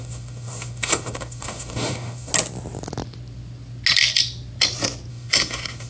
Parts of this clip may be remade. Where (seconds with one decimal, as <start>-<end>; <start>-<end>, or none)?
0.0-2.3; 5.1-5.9